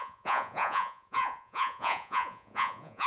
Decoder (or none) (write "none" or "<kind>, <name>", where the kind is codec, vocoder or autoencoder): vocoder, Vocos